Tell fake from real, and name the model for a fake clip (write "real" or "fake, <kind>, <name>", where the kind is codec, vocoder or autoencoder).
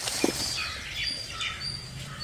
real